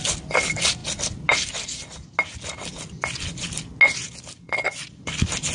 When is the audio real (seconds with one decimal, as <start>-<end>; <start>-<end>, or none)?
0.8-4.1